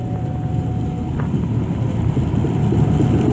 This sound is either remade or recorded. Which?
recorded